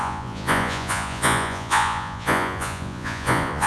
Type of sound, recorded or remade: remade